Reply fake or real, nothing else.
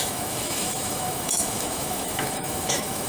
fake